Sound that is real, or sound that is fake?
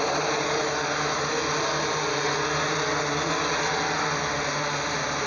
real